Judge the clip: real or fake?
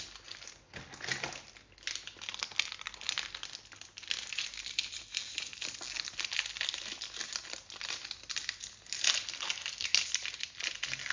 real